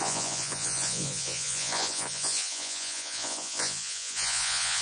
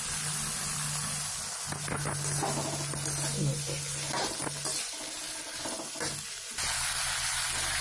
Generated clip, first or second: first